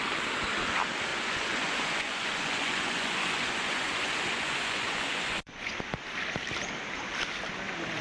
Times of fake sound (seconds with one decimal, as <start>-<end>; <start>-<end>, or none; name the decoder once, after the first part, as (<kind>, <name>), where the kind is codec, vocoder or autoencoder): 1.1-5.7 (vocoder, Vocos)